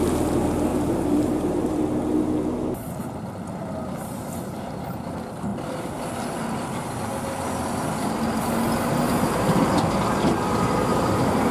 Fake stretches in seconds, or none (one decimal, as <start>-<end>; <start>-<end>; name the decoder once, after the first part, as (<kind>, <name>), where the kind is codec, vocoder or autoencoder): 0.7-1.8 (vocoder, BigVGAN v2); 10.9-11.5